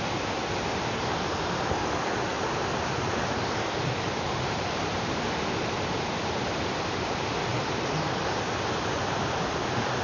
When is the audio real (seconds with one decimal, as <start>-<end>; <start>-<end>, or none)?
0.0-0.7; 1.3-2.3; 5.1-10.0